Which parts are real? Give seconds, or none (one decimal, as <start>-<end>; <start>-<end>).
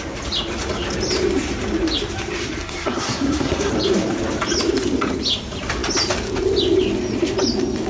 0.0-2.6; 3.7-7.9